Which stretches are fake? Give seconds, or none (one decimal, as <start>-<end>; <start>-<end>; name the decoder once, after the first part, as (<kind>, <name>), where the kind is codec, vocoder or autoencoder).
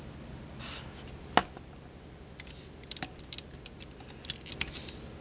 none